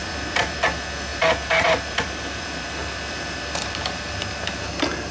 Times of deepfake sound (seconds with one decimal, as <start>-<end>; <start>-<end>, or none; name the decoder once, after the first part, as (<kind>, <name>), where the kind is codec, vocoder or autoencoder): 0.0-0.6 (vocoder, BigVGAN v2); 1.1-4.1